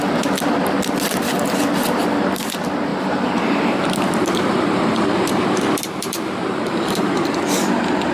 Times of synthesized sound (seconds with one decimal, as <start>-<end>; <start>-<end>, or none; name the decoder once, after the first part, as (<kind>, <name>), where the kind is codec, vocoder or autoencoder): 2.9-7.4 (vocoder, BigVGAN v2)